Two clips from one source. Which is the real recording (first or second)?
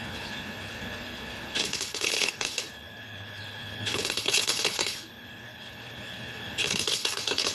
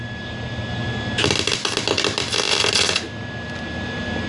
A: second